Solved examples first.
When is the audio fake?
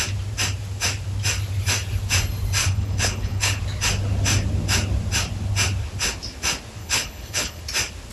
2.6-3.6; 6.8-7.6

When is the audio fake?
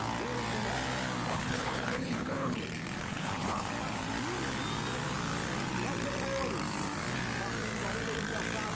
1.3-2.6; 3.0-3.7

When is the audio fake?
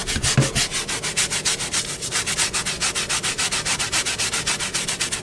none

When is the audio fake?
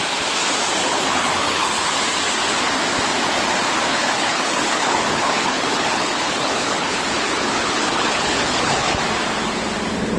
0.8-2.0; 3.9-9.0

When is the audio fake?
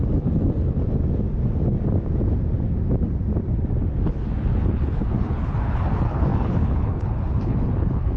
0.0-0.8; 4.1-8.2